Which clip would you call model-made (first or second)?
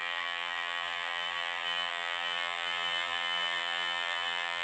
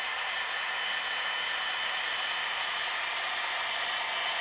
first